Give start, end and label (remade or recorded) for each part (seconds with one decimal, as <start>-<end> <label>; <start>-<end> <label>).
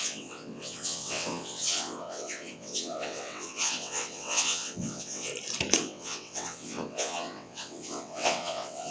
0.0-5.3 remade; 5.3-5.8 recorded; 5.8-8.9 remade